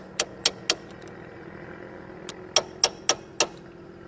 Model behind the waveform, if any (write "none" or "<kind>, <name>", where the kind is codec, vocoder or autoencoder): none